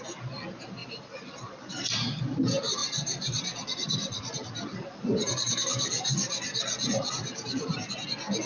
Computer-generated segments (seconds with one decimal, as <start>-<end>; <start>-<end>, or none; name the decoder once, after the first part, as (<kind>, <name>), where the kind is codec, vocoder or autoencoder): 0.8-2.2 (vocoder, BigVGAN v2); 2.8-7.9